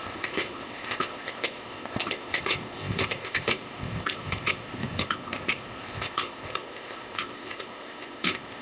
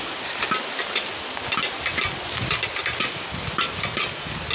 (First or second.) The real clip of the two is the second